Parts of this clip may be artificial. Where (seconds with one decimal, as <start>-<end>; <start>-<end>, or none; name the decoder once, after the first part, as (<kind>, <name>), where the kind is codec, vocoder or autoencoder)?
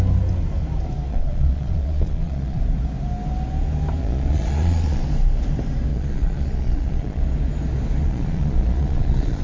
1.1-2.6 (vocoder, Vocos); 4.0-5.0; 5.9-7.2; 8.0-9.4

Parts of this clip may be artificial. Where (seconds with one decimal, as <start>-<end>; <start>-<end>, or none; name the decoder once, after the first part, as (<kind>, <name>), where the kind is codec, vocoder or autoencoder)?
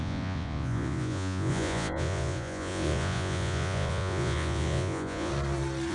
0.0-5.3 (vocoder, Vocos)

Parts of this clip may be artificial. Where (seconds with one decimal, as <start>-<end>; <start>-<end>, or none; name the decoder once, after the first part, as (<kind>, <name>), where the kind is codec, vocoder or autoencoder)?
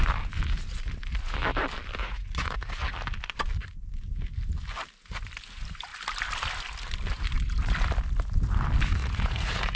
2.0-2.7 (vocoder, Vocos); 9.0-9.8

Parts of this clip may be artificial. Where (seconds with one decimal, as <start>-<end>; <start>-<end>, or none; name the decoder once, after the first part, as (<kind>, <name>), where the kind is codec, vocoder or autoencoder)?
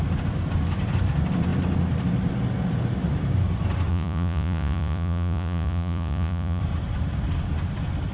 3.9-6.6 (vocoder, Vocos)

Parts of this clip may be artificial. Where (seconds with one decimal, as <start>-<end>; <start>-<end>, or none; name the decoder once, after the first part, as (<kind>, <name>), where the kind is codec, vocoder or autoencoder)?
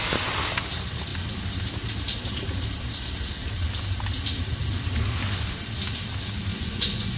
6.5-7.2 (vocoder, Vocos)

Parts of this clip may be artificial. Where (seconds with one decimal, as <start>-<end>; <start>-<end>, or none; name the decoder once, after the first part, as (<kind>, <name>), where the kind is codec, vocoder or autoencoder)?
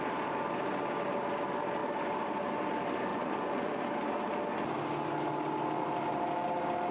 3.1-3.7 (vocoder, Vocos)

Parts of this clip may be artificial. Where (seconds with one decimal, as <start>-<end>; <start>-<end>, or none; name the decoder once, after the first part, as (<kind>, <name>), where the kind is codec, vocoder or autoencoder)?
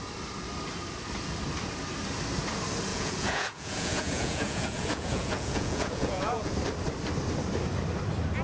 2.9-6.5 (vocoder, Vocos)